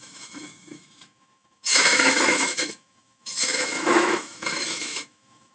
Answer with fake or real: fake